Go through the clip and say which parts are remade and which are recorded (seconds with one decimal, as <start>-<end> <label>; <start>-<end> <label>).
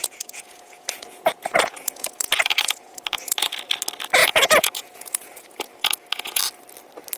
0.0-3.5 remade; 3.5-4.2 recorded; 4.2-6.4 remade; 6.4-7.2 recorded